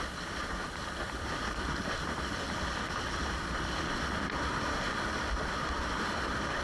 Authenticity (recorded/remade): recorded